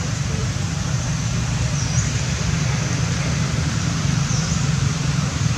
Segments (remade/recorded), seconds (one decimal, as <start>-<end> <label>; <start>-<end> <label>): 0.0-5.0 recorded; 5.0-5.6 remade